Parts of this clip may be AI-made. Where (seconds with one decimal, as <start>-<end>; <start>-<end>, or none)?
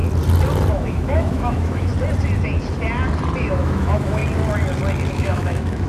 0.7-1.9; 3.4-4.2; 5.1-5.9